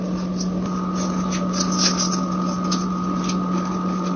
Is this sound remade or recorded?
recorded